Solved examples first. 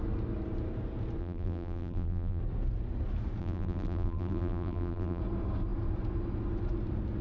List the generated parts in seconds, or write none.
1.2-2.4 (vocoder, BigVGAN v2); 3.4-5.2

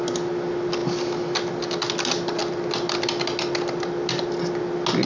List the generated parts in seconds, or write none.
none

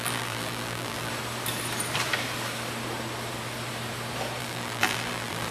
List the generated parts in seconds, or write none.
0.0-1.1 (vocoder, BigVGAN v2); 4.4-5.5

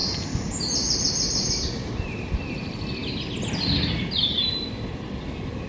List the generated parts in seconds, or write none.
0.0-2.4 (vocoder, BigVGAN v2)

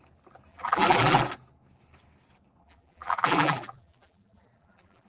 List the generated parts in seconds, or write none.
0.5-1.2 (vocoder, BigVGAN v2); 2.6-5.1